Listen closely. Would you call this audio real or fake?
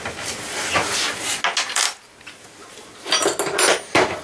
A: real